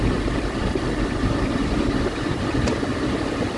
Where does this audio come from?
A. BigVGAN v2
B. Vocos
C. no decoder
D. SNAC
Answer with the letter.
A